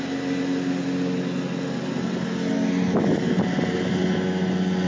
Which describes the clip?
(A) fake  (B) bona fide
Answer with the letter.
B